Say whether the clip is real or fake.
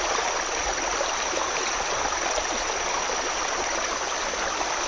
real